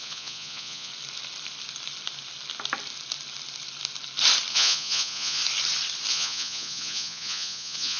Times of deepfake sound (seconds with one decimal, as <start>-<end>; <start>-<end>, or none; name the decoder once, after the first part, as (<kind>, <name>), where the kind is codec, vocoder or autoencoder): 0.0-0.9 (vocoder, Vocos); 4.5-5.4; 6.1-8.0